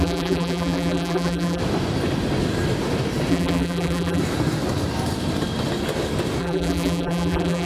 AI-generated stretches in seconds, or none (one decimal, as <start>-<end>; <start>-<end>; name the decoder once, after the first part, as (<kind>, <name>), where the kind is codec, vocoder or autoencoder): 0.0-1.6 (vocoder, BigVGAN v2); 3.3-4.2; 6.4-7.7